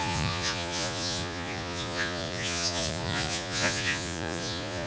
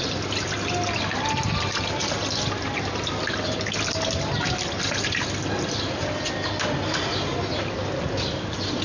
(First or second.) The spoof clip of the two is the first